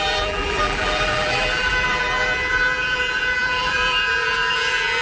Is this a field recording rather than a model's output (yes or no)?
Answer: no